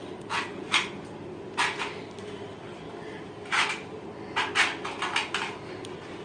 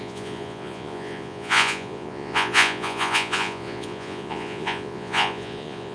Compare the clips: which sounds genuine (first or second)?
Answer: first